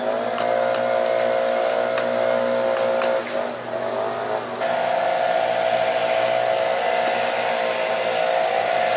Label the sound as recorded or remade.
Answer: recorded